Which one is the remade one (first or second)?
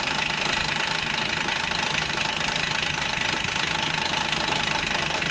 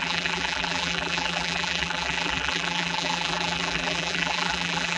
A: second